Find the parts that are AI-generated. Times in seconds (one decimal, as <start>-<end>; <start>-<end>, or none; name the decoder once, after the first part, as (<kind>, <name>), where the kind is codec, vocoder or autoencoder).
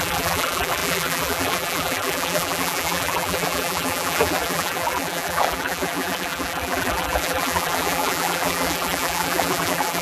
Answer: 0.0-10.0 (vocoder, BigVGAN v2)